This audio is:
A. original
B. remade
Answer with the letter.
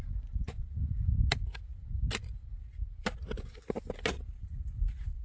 A